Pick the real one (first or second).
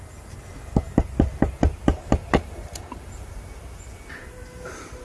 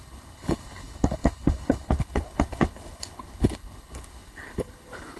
first